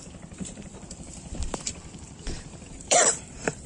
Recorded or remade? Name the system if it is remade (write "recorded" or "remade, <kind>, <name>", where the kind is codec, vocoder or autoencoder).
remade, vocoder, BigVGAN v2